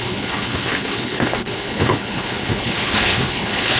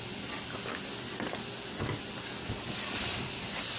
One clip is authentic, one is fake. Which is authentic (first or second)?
second